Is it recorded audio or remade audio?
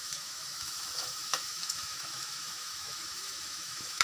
remade